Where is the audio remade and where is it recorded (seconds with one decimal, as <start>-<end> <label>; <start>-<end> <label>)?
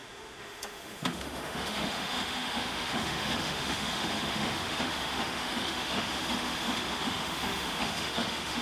0.0-8.6 remade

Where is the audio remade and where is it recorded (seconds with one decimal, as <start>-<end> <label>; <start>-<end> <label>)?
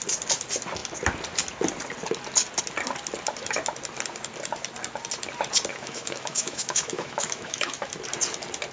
0.0-5.7 recorded; 5.7-7.9 remade; 7.9-8.7 recorded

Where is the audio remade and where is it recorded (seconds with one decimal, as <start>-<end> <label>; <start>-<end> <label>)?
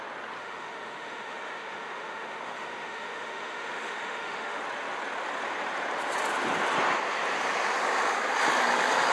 0.0-0.4 recorded; 0.4-4.6 remade; 4.6-9.1 recorded